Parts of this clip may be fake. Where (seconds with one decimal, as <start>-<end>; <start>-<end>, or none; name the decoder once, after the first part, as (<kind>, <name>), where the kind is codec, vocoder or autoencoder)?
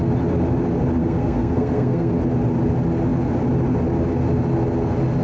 1.0-2.1 (codec, SNAC)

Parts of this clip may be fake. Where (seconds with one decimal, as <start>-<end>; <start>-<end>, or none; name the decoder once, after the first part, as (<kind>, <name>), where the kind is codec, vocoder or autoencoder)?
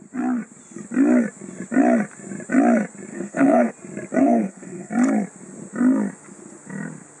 3.1-3.7 (codec, SNAC); 4.2-4.9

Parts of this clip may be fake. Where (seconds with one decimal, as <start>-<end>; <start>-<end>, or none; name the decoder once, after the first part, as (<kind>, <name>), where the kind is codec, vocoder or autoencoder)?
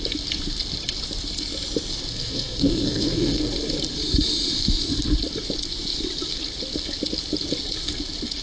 2.1-3.5 (codec, SNAC)